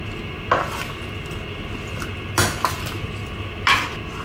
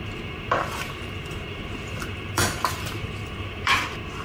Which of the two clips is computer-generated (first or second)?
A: second